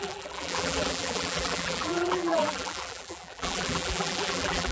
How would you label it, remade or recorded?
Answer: remade